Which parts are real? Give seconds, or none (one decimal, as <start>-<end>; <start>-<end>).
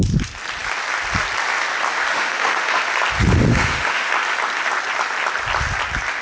0.0-2.1; 2.8-3.5; 4.1-6.2